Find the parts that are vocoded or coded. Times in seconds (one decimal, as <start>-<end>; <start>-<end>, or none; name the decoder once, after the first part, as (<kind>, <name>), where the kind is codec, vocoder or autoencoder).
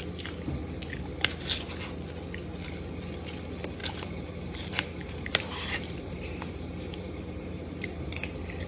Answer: 3.8-8.0 (vocoder, BigVGAN v2)